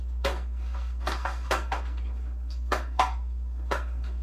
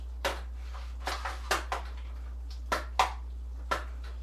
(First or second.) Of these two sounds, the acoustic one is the second